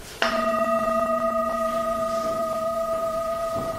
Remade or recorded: remade